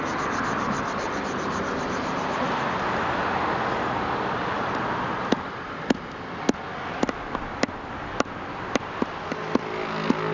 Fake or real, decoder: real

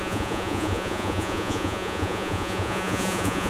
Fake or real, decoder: fake, vocoder, Vocos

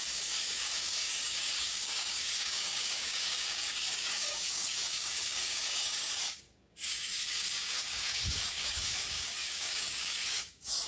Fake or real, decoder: fake, codec, DAC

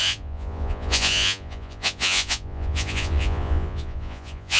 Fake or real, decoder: fake, vocoder, Vocos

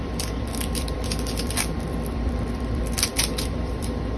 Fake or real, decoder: fake, vocoder, BigVGAN v2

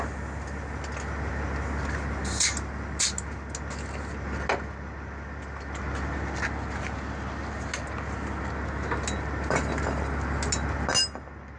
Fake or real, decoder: real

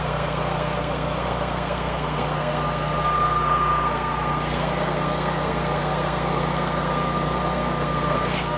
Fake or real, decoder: fake, codec, SNAC